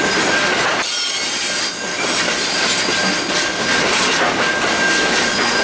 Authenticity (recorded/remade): recorded